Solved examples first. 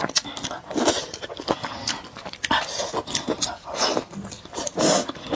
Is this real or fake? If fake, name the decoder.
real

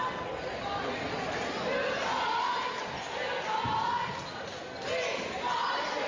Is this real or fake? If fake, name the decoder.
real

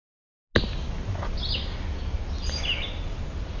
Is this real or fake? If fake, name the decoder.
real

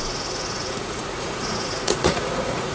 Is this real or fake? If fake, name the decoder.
fake, vocoder, Vocos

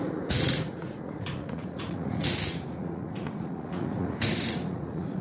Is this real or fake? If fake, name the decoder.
fake, vocoder, Vocos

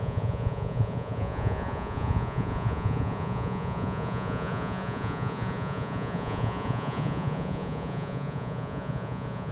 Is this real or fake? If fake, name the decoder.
fake, vocoder, Vocos